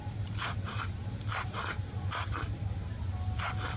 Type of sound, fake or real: real